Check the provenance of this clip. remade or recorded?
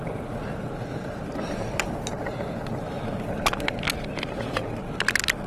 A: recorded